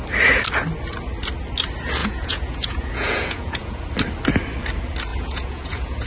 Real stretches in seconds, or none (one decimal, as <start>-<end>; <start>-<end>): 0.0-2.0; 3.8-5.1